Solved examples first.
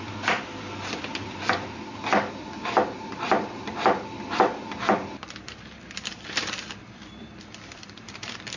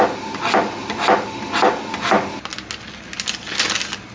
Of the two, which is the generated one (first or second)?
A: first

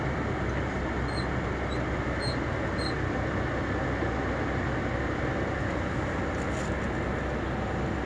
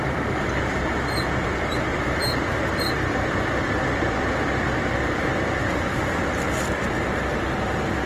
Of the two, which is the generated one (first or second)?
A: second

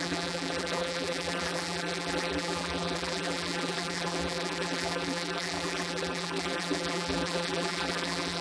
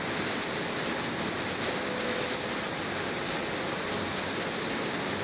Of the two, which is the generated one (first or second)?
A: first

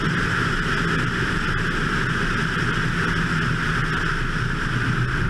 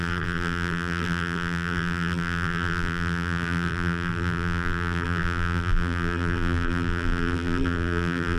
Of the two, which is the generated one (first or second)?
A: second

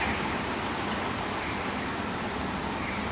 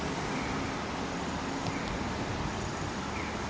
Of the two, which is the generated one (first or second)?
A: first